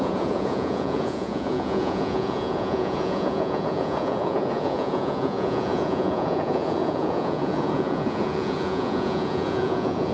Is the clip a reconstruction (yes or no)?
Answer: yes